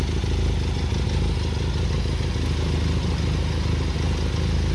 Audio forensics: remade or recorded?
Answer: recorded